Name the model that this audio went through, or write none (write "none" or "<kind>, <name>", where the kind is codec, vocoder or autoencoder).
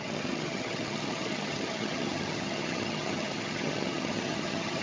vocoder, HiFi-GAN